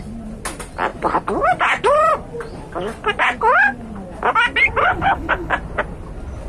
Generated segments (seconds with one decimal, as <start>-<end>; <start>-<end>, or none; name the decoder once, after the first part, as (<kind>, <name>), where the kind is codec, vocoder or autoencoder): 4.8-5.5 (codec, HILCodec)